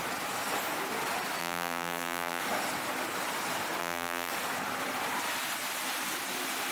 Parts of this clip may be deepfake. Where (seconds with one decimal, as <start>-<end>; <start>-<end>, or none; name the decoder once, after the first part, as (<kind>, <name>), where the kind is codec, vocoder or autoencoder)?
1.4-2.4 (vocoder, BigVGAN v2); 3.8-4.3